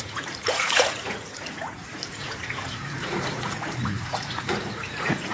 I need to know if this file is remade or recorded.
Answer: remade